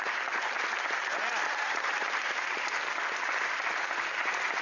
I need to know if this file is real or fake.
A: real